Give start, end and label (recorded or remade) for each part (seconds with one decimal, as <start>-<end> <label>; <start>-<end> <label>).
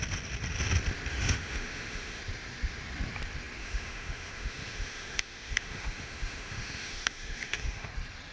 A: 0.0-1.1 recorded; 1.1-2.2 remade; 2.2-3.6 recorded; 3.6-7.9 remade; 7.9-8.3 recorded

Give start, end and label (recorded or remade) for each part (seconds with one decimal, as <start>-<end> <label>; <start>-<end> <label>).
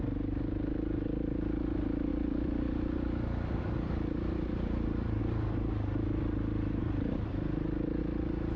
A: 0.0-2.1 recorded; 2.1-5.2 remade; 5.2-6.8 recorded; 6.8-8.0 remade; 8.0-8.6 recorded